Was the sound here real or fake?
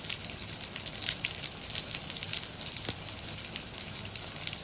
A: fake